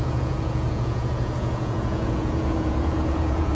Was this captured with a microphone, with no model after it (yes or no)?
no